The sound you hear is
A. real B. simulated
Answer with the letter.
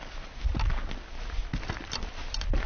A